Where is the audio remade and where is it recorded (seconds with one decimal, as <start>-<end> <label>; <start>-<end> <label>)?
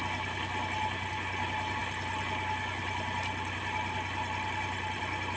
0.0-5.4 recorded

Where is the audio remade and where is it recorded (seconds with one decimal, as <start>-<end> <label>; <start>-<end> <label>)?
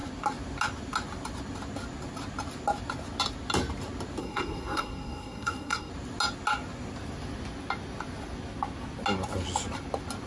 0.0-4.2 recorded; 4.2-5.9 remade; 5.9-10.3 recorded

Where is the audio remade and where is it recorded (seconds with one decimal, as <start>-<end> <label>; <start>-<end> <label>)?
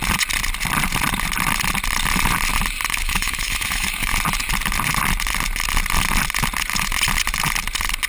0.0-2.9 recorded; 2.9-4.1 remade; 4.1-8.1 recorded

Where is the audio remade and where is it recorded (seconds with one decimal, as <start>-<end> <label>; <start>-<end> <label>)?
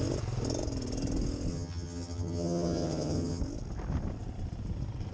0.0-1.5 recorded; 1.5-3.4 remade; 3.4-5.1 recorded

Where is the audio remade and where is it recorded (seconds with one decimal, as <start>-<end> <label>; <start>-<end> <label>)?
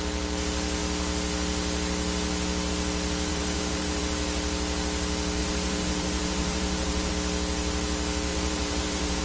0.0-3.3 recorded; 3.3-4.0 remade; 4.0-5.4 recorded; 5.4-7.1 remade; 7.1-8.3 recorded; 8.3-9.2 remade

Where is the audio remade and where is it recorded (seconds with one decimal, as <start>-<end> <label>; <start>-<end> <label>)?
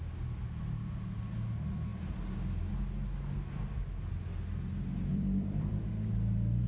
0.0-5.1 recorded; 5.1-5.9 remade; 5.9-6.7 recorded